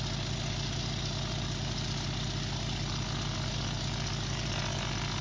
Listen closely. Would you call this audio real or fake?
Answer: real